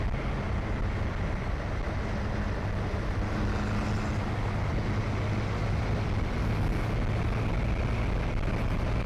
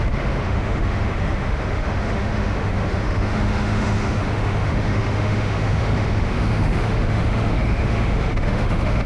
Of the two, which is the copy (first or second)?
second